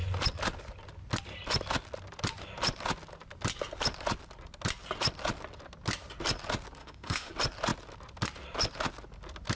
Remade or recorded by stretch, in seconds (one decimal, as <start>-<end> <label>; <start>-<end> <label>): 0.0-6.8 recorded; 6.8-7.3 remade; 7.3-9.6 recorded